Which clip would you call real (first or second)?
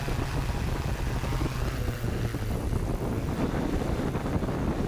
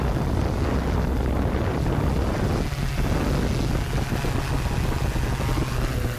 second